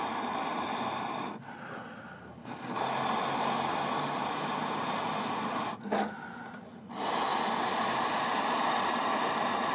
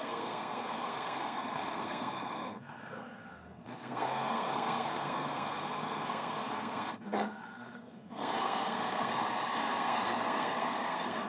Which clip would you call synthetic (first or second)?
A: second